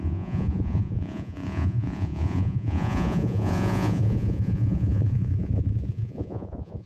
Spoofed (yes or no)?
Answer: yes